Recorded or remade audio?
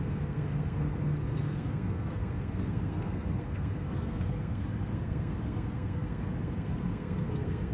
remade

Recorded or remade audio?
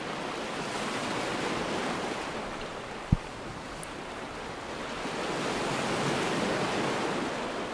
recorded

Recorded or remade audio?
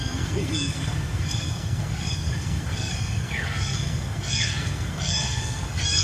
remade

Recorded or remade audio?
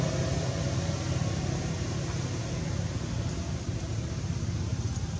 recorded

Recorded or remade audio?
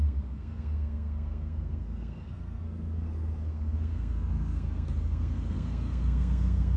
remade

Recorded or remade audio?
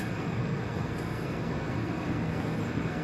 remade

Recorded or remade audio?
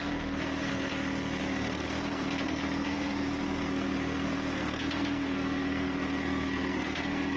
remade